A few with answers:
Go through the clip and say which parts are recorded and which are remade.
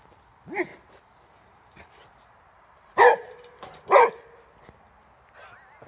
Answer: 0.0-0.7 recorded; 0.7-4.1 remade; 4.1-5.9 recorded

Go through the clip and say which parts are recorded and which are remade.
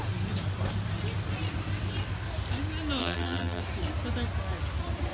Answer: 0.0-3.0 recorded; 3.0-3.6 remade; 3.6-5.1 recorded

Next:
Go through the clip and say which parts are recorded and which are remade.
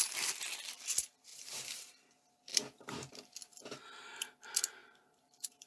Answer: 0.0-1.3 recorded; 1.3-1.8 remade; 1.8-2.5 recorded; 2.5-3.1 remade; 3.1-3.5 recorded; 3.5-4.1 remade; 4.1-4.8 recorded; 4.8-5.7 remade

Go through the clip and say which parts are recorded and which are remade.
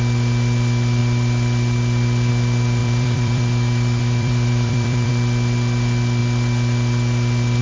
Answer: 0.0-2.8 recorded; 2.8-5.1 remade; 5.1-7.6 recorded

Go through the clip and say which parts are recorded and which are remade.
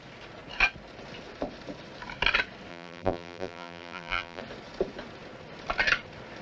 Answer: 0.0-2.7 recorded; 2.7-4.4 remade; 4.4-6.4 recorded